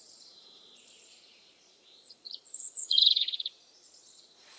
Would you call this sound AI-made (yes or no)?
yes